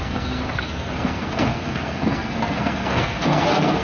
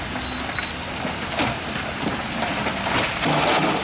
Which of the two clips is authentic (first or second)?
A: second